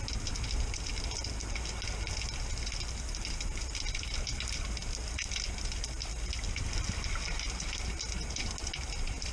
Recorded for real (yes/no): yes